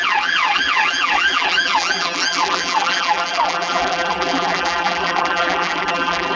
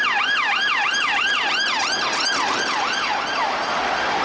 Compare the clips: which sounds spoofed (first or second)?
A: first